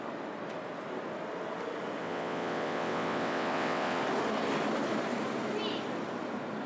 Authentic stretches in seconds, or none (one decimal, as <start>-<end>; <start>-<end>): 0.0-2.0; 4.0-6.7